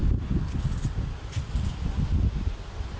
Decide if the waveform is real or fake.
real